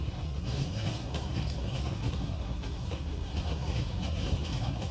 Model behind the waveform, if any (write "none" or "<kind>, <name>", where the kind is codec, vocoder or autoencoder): codec, SNAC